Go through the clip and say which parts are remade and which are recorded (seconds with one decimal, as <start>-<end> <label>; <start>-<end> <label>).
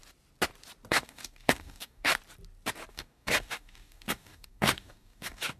0.0-0.9 recorded; 0.9-2.1 remade; 2.1-2.9 recorded; 2.9-5.6 remade